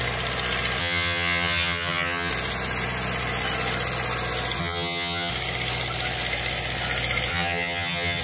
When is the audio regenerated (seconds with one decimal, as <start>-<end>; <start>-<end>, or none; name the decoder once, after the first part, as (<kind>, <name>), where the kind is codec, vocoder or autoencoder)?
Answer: 0.8-2.3 (vocoder, HiFi-GAN); 4.6-5.3; 7.3-8.2